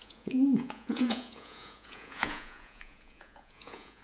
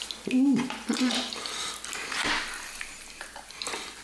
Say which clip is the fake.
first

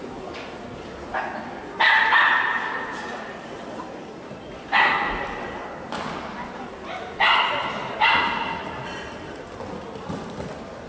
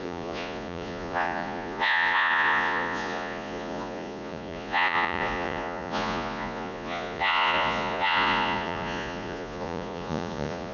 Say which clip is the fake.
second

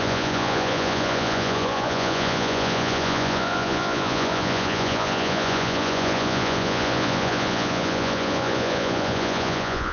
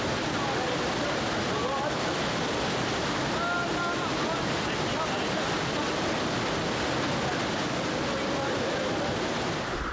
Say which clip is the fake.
first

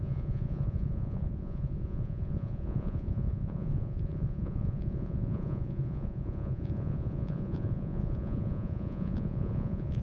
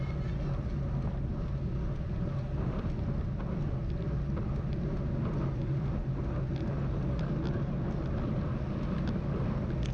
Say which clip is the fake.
first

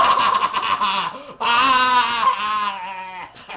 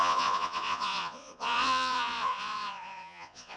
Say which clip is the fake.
second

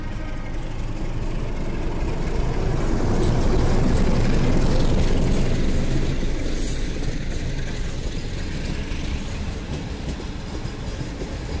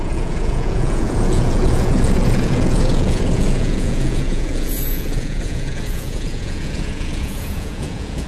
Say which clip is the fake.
second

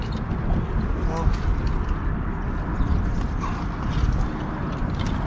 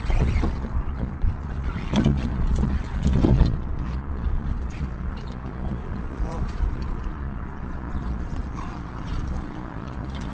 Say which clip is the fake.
second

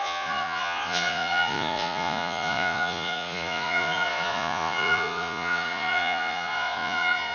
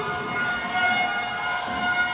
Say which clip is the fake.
first